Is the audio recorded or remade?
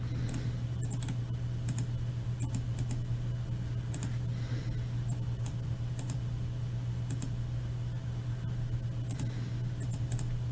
recorded